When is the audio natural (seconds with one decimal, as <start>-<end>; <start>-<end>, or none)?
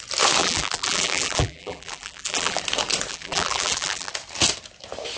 0.0-0.4; 2.6-3.1; 4.1-5.2